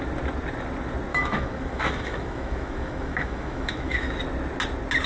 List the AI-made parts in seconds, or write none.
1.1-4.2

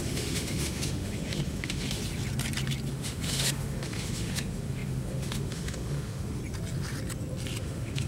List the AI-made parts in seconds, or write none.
0.0-2.0; 2.9-6.4; 7.6-8.1

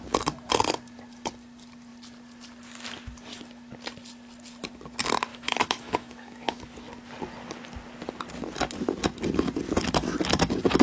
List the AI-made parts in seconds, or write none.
5.3-6.6

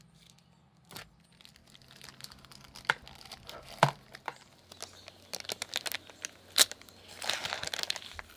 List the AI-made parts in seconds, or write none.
none

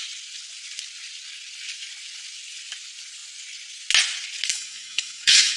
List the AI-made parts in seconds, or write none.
4.5-5.6

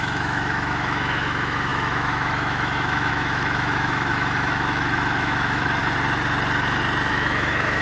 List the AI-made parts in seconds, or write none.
0.0-5.8; 7.1-7.8

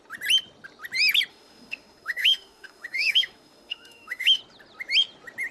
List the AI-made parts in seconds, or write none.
1.3-4.4